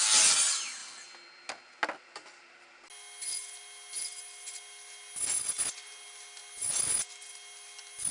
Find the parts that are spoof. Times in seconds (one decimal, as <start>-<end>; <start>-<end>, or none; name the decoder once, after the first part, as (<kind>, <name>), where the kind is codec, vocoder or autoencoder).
none